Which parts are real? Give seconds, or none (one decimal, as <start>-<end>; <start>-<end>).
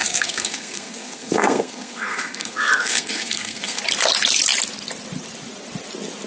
3.8-6.3